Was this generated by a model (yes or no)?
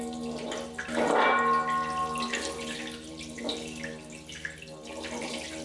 no